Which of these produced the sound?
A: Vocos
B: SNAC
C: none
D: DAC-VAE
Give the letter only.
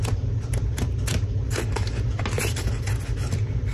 C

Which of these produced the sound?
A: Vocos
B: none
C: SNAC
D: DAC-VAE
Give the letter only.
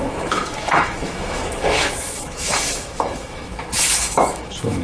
D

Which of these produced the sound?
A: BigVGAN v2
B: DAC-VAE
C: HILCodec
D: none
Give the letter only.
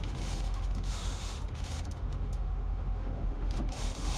B